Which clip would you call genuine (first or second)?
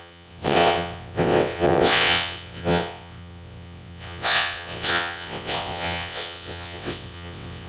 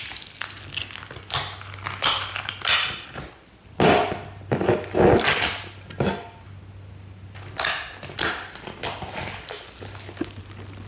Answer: second